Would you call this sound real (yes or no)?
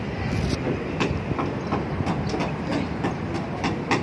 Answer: yes